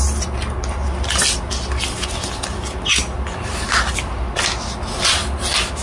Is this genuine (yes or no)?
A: yes